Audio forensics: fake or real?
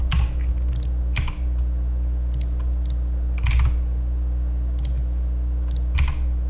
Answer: real